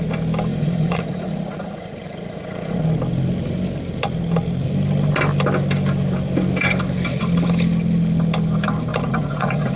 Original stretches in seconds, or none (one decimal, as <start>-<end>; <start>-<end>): 0.0-0.5; 2.8-8.9

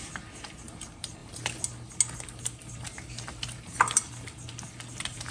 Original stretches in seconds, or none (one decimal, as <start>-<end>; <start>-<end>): 0.0-5.3